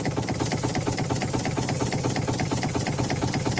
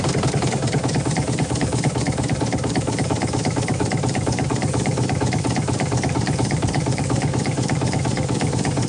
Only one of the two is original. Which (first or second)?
first